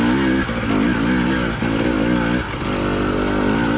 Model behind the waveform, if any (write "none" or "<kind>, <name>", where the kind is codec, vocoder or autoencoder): none